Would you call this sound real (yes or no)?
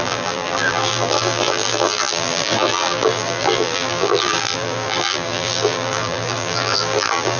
no